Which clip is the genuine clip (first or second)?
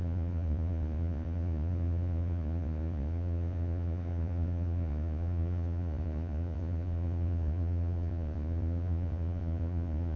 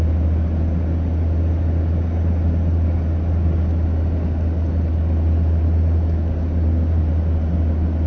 second